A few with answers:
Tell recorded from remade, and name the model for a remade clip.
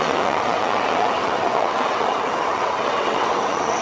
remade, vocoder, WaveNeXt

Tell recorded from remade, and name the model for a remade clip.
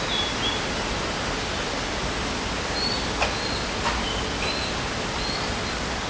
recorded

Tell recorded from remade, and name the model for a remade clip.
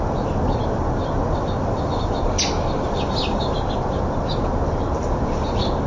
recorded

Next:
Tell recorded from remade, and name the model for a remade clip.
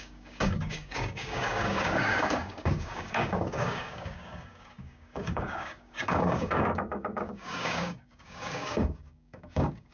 remade, codec, DAC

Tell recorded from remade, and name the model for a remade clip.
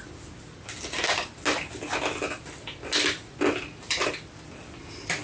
recorded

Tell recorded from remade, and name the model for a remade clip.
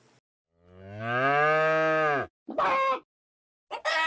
recorded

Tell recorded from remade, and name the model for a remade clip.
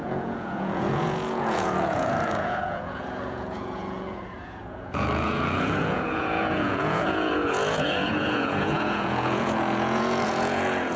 remade, vocoder, Vocos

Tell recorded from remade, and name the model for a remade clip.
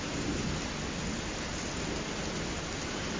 recorded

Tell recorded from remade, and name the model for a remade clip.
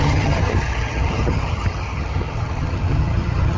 remade, vocoder, HiFi-GAN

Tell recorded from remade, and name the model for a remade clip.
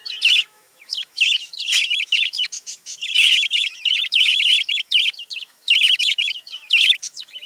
remade, autoencoder, DAC-VAE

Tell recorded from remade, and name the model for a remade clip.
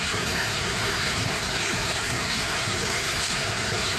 remade, codec, SNAC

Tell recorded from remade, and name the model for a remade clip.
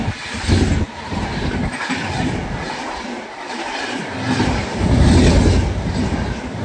recorded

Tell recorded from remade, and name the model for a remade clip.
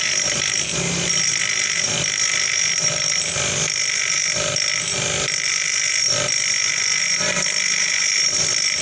recorded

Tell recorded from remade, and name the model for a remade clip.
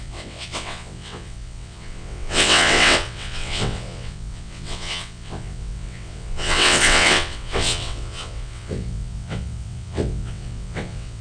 remade, vocoder, WaveNeXt